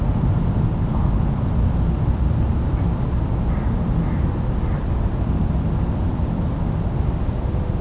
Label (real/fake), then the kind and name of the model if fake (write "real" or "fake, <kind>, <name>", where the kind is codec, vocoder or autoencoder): real